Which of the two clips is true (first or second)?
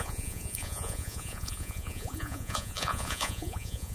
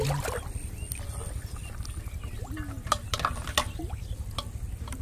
second